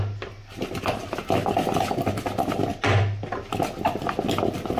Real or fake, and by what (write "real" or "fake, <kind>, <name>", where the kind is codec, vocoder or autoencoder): real